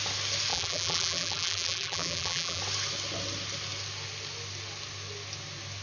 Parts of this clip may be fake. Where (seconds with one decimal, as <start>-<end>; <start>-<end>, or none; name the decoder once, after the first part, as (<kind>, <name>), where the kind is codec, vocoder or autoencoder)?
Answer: 0.5-2.6 (vocoder, BigVGAN v2)